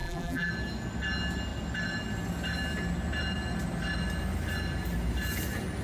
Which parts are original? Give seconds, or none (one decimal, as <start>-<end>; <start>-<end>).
0.5-5.8